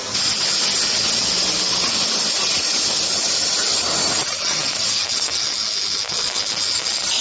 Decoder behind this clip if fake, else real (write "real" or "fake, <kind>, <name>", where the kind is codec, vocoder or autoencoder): real